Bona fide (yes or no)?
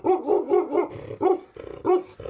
yes